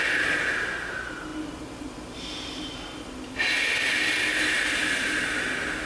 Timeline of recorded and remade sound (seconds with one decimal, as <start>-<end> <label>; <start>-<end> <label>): 0.0-1.3 recorded; 1.3-4.3 remade; 4.3-5.9 recorded